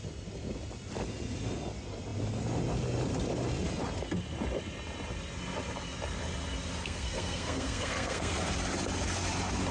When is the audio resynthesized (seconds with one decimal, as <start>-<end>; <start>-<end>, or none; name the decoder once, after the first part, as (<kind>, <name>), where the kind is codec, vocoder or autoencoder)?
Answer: 6.8-8.4 (codec, SNAC)